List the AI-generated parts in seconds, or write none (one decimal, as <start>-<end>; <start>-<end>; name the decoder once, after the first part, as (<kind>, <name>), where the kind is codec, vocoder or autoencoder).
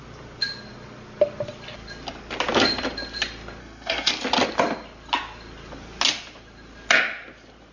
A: 3.6-4.1 (codec, SNAC)